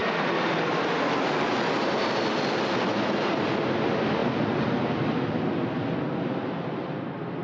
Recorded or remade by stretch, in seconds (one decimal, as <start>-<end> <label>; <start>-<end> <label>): 0.0-7.4 recorded